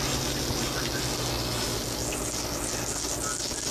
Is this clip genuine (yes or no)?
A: yes